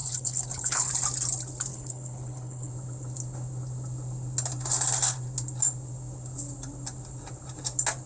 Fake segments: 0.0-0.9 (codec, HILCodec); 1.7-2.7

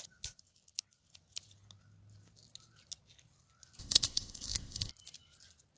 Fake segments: 3.8-4.9 (codec, ZipCodec)

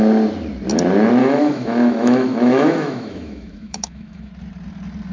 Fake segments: 1.2-4.3 (autoencoder, DAC-VAE)

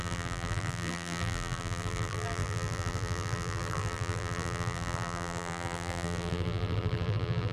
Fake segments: 0.0-7.5 (vocoder, BigVGAN v2)

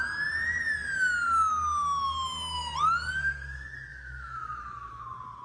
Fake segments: 3.9-5.0 (autoencoder, DAC-VAE)

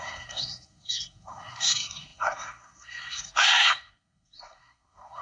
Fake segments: 0.0-5.2 (codec, SNAC)